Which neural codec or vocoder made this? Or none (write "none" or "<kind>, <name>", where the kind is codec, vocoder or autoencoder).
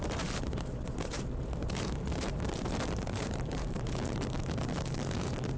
vocoder, BigVGAN v2